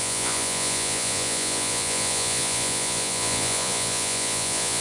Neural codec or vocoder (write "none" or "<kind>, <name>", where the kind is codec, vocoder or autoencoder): vocoder, Vocos